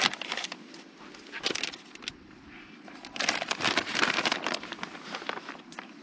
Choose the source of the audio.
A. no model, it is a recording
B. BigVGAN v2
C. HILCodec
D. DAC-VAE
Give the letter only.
A